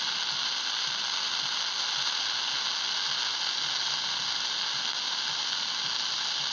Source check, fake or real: real